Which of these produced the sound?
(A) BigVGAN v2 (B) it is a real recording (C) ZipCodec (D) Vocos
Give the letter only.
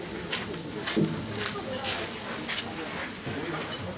B